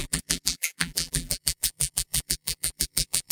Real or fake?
fake